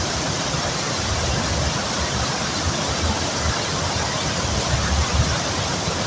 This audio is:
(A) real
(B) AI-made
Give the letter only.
A